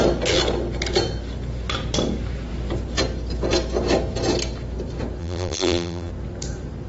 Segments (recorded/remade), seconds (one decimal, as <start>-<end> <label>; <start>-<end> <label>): 0.0-5.2 recorded; 5.2-6.1 remade; 6.1-6.9 recorded